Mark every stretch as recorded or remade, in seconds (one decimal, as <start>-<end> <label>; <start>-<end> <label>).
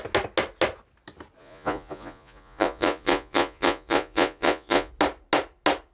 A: 0.0-1.4 recorded; 1.4-4.9 remade; 4.9-5.9 recorded